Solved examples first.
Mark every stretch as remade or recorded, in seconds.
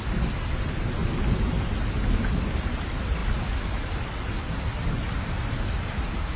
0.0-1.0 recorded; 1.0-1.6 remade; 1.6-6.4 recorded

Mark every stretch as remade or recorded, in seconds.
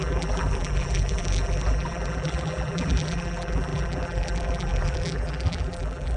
0.0-6.2 remade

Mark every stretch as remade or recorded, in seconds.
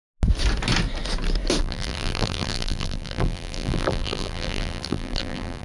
0.0-1.6 recorded; 1.6-5.6 remade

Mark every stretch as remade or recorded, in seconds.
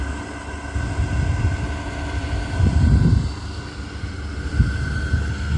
0.0-2.2 recorded; 2.2-4.6 remade; 4.6-5.6 recorded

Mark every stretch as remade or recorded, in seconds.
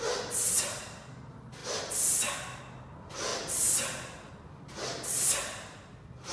0.0-6.3 recorded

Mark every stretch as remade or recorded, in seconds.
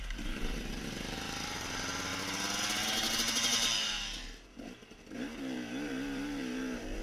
0.0-2.1 remade; 2.1-2.8 recorded; 2.8-7.0 remade